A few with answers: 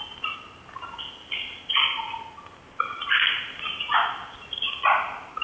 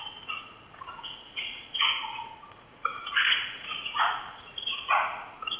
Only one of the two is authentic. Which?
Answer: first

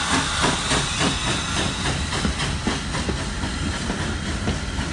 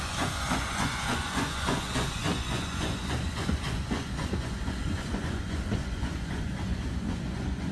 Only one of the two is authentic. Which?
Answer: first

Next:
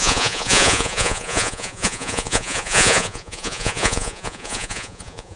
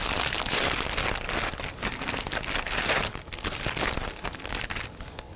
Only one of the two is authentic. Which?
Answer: second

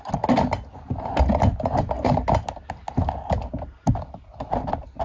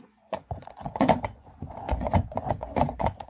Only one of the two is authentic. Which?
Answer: first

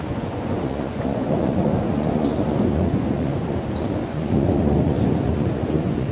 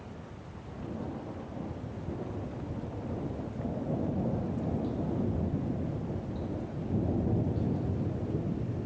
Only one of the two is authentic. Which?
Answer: second